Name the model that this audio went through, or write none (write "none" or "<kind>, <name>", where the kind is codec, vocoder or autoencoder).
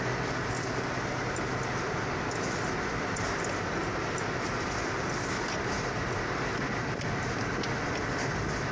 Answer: none